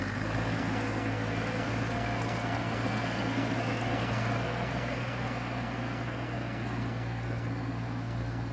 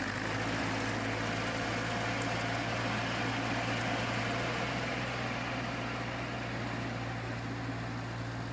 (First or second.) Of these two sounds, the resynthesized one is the first